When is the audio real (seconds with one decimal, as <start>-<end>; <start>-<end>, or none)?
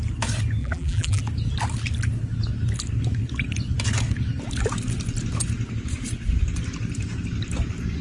0.0-0.6; 1.2-8.0